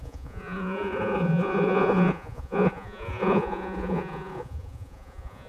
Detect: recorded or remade remade